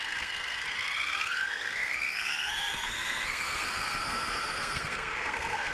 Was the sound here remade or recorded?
remade